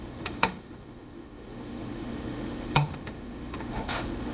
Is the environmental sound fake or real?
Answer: fake